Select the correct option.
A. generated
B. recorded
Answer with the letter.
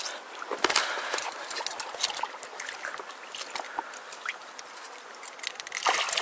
B